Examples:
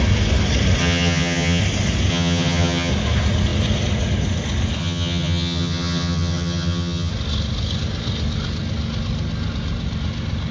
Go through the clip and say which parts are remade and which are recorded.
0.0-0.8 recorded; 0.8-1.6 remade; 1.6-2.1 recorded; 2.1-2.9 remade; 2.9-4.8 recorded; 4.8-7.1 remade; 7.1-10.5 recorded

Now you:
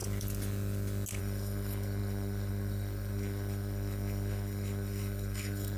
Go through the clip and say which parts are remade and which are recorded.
0.0-1.2 recorded; 1.2-5.8 remade

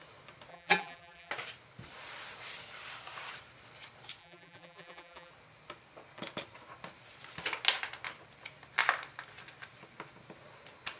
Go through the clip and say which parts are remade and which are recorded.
0.0-0.5 recorded; 0.5-1.3 remade; 1.3-4.2 recorded; 4.2-5.3 remade; 5.3-11.0 recorded

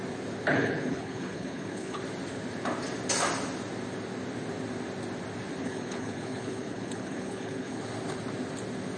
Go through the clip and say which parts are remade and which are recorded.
0.0-0.5 recorded; 0.5-2.0 remade; 2.0-5.6 recorded; 5.6-7.8 remade; 7.8-9.0 recorded

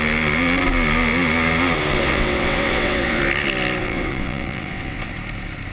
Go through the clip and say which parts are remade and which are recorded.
0.0-1.9 recorded; 1.9-3.2 remade; 3.2-3.8 recorded; 3.8-5.1 remade; 5.1-5.7 recorded

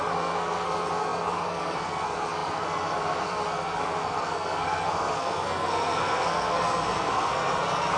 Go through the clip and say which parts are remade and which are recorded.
0.0-8.0 remade